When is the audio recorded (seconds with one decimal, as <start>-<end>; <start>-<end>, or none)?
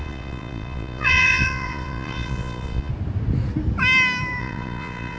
2.9-4.4